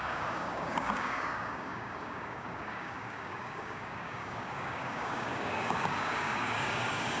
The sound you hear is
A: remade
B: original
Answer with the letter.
A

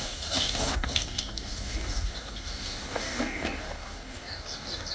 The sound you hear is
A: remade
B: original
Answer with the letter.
A